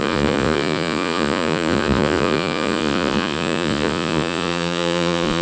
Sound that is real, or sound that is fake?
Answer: fake